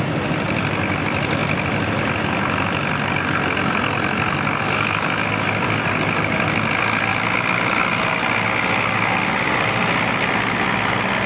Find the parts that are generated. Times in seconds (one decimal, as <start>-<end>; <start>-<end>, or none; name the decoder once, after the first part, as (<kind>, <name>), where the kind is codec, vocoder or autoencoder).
4.6-5.3 (autoencoder, DAC-VAE)